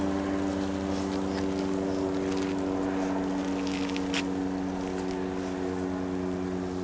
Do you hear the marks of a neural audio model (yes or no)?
no